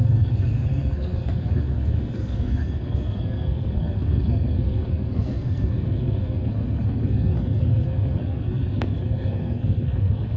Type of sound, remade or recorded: remade